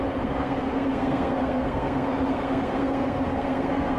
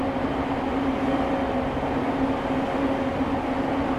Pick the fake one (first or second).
first